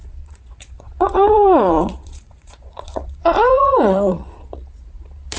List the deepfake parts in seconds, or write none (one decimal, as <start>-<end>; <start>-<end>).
0.0-5.4